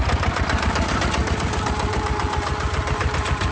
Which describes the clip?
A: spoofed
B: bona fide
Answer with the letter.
A